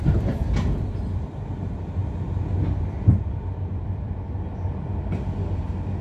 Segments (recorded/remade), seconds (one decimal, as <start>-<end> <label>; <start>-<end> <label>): 0.0-2.0 remade; 2.0-3.2 recorded; 3.2-4.9 remade; 4.9-6.0 recorded